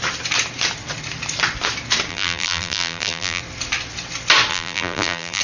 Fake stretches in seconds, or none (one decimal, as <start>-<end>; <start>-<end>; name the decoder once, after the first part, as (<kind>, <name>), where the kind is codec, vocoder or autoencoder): 2.1-3.4 (vocoder, BigVGAN v2); 4.5-5.4